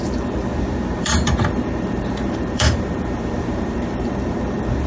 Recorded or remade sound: remade